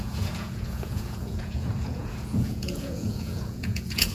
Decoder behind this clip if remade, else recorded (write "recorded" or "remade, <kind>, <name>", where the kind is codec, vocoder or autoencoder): remade, vocoder, Vocos